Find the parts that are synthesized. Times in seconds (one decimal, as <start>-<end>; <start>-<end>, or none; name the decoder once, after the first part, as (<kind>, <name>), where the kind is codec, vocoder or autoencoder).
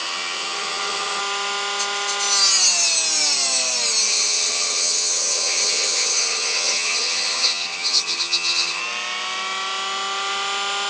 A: 0.0-1.2 (vocoder, HiFi-GAN); 4.1-8.8